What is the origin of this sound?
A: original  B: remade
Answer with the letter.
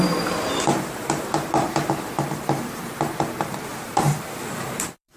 B